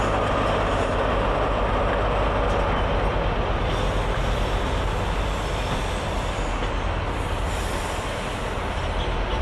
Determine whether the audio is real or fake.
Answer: real